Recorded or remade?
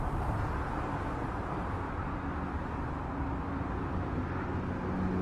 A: recorded